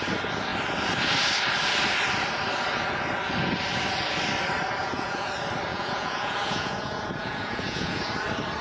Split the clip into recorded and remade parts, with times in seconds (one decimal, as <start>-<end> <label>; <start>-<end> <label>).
0.0-4.8 recorded; 4.8-5.3 remade; 5.3-5.7 recorded; 5.7-8.1 remade; 8.1-8.6 recorded